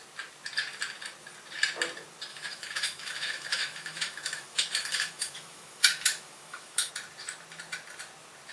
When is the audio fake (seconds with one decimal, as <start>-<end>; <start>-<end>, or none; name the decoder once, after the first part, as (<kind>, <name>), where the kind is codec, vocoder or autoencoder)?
2.3-6.9 (autoencoder, DAC-VAE)